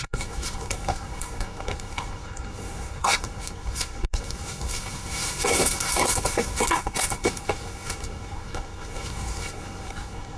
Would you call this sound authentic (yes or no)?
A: no